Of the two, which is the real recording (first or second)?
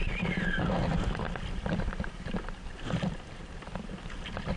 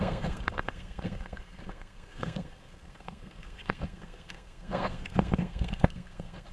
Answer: first